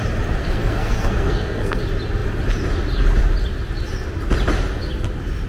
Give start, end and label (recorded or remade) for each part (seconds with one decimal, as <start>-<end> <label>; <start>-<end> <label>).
0.0-0.4 recorded; 0.4-1.8 remade; 1.8-5.5 recorded